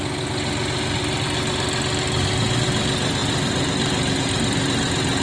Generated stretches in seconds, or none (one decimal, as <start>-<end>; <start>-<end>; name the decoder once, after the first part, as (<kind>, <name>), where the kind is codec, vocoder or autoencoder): 3.2-4.3 (vocoder, BigVGAN v2)